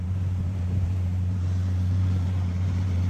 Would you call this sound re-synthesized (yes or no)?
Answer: yes